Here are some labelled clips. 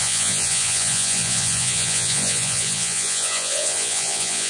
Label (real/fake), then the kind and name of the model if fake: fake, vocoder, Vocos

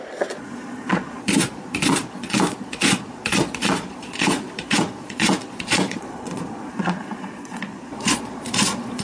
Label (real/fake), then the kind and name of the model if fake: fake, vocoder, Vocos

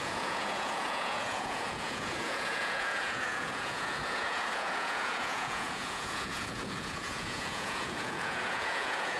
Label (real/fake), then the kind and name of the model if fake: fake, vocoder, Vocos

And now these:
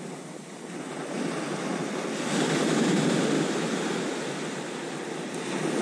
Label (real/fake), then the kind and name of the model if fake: real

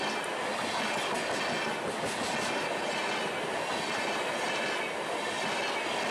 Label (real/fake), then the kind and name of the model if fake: real